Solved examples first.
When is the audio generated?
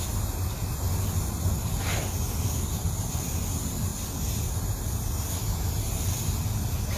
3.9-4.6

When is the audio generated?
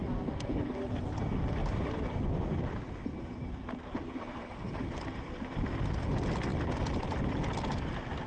1.6-2.2; 3.1-5.3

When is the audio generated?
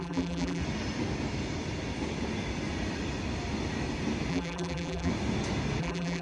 0.0-0.6; 4.3-5.1; 5.8-6.2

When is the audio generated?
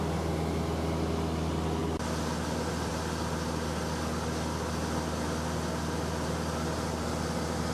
none